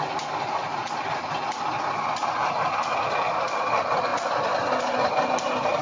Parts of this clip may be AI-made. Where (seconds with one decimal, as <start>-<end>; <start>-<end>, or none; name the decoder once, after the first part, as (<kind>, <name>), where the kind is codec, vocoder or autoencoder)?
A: none

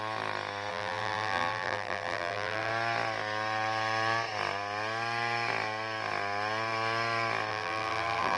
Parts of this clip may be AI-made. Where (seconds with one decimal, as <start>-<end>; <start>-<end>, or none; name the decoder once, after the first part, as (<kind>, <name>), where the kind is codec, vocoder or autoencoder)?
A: 0.7-2.7 (vocoder, BigVGAN v2); 7.5-8.4